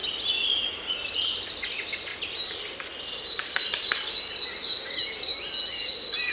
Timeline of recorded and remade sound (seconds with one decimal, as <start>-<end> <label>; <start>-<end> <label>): 0.0-1.1 remade; 1.1-2.1 recorded; 2.1-4.3 remade; 4.3-5.3 recorded; 5.3-6.3 remade